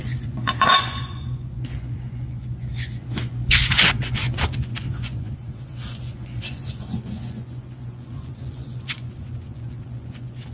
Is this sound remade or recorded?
remade